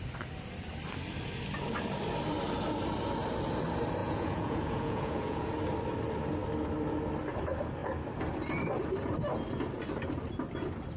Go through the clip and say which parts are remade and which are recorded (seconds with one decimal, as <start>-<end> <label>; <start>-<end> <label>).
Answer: 0.0-4.0 recorded; 4.0-5.5 remade; 5.5-11.0 recorded